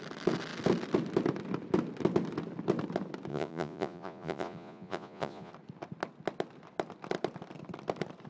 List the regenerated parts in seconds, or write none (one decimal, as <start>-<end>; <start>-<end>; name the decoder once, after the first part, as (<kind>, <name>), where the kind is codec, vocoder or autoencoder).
3.3-5.5 (vocoder, Vocos)